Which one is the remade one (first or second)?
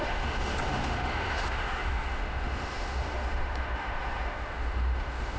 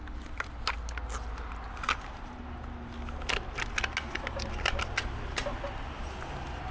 first